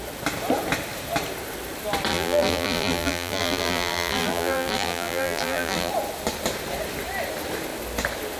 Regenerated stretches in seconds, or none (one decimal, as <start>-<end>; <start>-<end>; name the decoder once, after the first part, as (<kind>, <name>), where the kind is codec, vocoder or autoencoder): 2.1-5.9 (vocoder, BigVGAN v2)